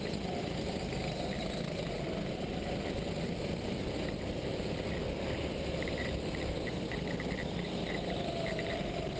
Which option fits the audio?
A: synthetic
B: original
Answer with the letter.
B